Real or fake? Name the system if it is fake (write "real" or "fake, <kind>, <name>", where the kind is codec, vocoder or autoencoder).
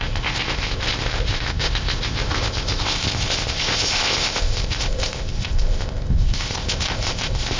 fake, codec, ZipCodec